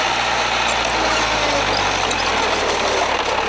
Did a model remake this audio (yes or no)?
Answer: no